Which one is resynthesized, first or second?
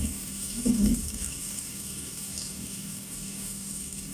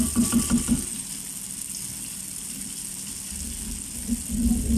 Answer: first